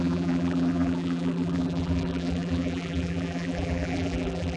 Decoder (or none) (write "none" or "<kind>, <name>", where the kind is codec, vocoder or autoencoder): vocoder, BigVGAN v2